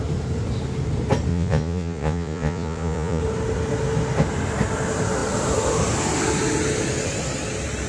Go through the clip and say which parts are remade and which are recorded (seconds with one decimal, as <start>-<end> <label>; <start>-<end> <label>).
0.0-1.3 recorded; 1.3-3.2 remade; 3.2-7.9 recorded